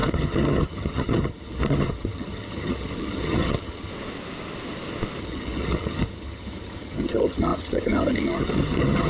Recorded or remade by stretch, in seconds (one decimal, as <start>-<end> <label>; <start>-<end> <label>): 0.0-3.9 remade; 3.9-5.2 recorded; 5.2-9.1 remade